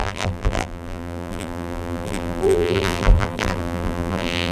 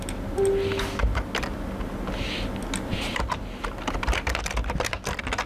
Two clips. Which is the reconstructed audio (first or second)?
first